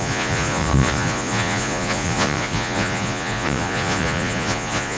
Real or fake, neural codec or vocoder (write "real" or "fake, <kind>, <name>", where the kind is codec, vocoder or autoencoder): fake, vocoder, Vocos